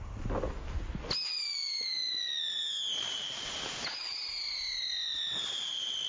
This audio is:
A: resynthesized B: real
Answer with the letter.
B